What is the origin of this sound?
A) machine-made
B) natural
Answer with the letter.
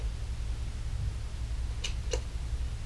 B